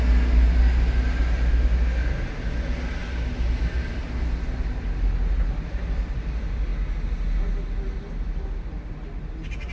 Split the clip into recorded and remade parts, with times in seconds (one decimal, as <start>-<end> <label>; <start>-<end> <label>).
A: 0.0-9.7 recorded